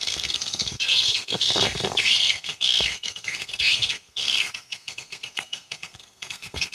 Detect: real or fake fake